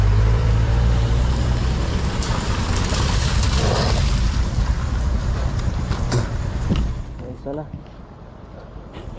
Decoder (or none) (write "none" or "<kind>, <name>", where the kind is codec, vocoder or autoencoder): vocoder, BigVGAN v2